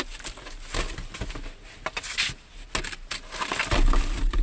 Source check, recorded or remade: recorded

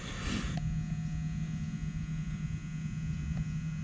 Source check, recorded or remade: recorded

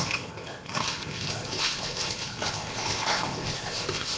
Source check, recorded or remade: remade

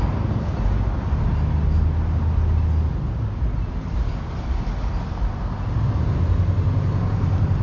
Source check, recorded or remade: recorded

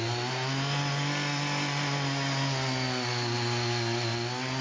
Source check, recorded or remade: recorded